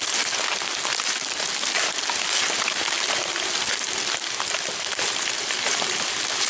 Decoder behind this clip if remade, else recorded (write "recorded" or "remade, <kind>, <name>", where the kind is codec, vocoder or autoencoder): recorded